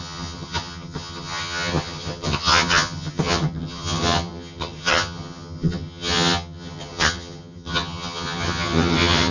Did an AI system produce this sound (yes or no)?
yes